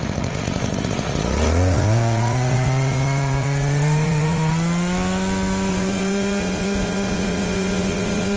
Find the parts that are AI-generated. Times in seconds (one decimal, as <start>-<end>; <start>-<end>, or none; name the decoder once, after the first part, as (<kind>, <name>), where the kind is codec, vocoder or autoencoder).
0.0-4.5 (vocoder, Vocos); 5.7-8.4